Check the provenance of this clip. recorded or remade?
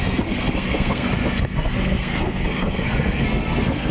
remade